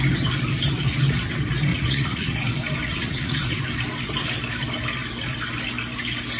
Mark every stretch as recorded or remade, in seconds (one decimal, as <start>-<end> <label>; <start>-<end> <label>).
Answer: 0.0-1.7 recorded; 1.7-2.5 remade; 2.5-2.9 recorded; 2.9-3.6 remade; 3.6-6.4 recorded